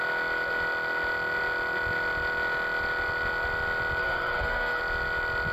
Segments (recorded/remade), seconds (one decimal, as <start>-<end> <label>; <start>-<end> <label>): 0.0-4.0 recorded; 4.0-4.8 remade; 4.8-5.5 recorded